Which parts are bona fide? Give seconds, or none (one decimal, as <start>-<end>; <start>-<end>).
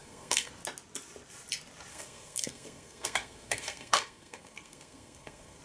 0.5-1.9